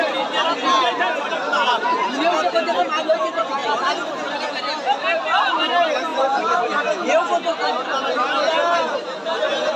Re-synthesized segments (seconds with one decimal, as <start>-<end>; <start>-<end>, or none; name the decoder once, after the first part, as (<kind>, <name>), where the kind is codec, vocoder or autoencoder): 6.1-6.8 (vocoder, BigVGAN v2)